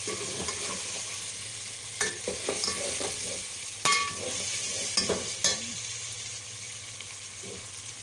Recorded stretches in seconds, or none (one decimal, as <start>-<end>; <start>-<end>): 0.0-8.0